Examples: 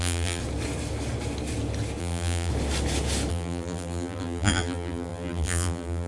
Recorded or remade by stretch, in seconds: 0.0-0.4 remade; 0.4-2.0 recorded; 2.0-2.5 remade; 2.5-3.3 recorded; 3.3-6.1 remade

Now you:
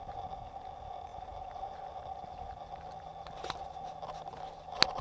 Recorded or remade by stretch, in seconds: 0.0-5.0 recorded